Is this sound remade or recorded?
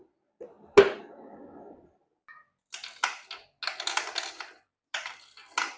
recorded